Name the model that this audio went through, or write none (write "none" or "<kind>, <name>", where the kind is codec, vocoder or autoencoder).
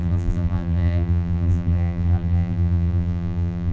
vocoder, BigVGAN v2